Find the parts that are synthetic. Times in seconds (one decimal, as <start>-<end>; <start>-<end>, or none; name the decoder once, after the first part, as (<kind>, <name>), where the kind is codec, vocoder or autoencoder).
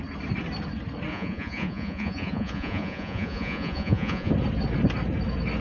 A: 1.1-4.3 (vocoder, Vocos)